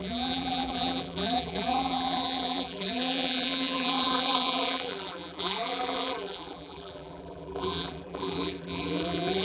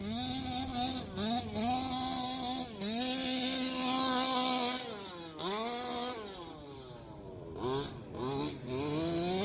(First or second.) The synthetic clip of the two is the first